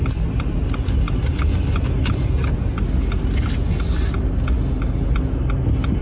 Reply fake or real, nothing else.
real